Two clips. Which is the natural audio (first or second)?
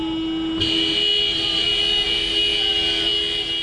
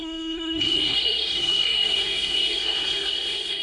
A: first